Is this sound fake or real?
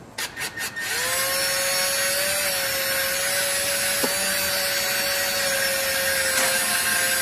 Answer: real